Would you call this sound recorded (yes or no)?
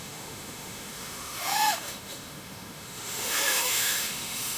no